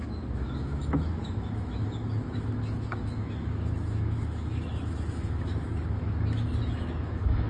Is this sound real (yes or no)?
no